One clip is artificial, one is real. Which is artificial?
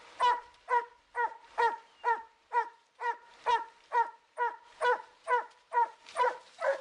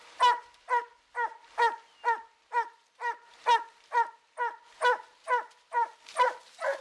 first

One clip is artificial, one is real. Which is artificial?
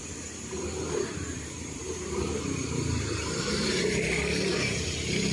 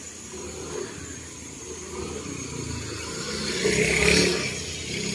first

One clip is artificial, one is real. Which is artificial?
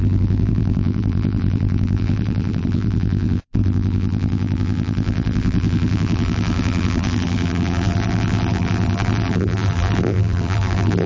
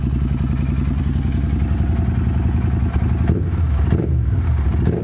first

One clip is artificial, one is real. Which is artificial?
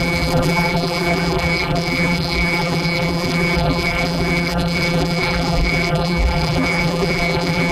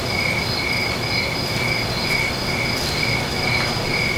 first